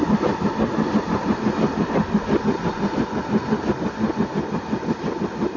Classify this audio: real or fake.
fake